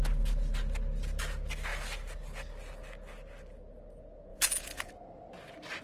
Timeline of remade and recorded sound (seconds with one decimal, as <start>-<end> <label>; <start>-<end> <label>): 0.0-4.3 recorded; 4.3-4.9 remade; 4.9-5.8 recorded